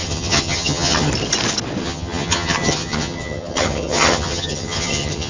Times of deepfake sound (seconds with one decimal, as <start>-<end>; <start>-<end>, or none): 0.0-1.1; 1.8-5.3